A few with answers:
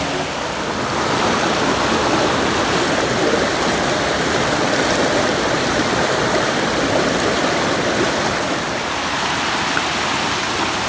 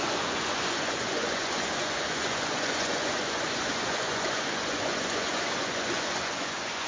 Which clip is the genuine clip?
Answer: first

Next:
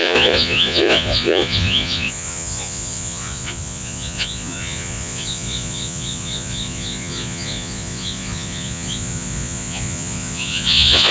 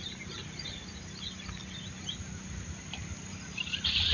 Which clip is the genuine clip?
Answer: second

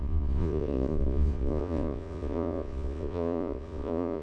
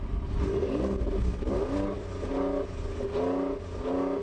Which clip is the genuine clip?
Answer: second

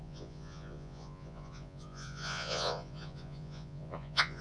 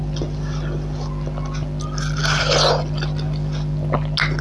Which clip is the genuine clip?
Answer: second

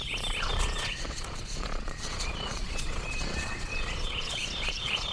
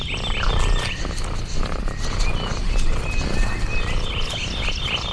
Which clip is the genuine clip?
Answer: second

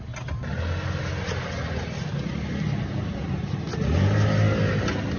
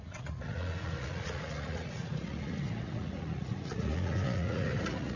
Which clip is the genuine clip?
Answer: first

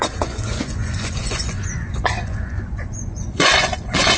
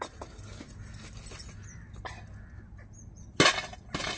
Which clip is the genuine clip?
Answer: second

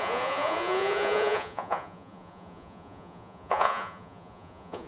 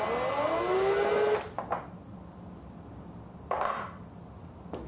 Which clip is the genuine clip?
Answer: second